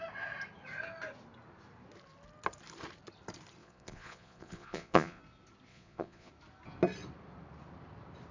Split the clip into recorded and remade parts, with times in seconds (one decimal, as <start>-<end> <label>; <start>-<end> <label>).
0.0-3.6 recorded; 3.6-5.2 remade; 5.2-5.7 recorded; 5.7-6.3 remade; 6.3-8.3 recorded